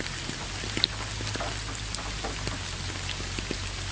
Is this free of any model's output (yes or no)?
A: yes